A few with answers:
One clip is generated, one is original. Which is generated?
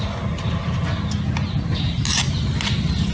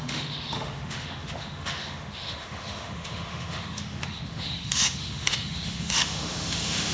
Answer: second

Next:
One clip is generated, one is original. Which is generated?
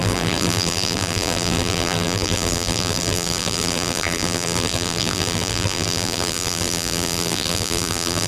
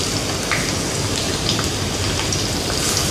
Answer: first